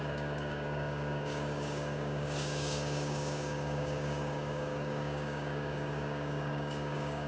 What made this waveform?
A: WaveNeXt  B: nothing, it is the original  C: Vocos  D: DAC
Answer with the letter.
D